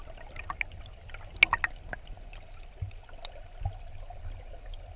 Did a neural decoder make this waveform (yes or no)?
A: no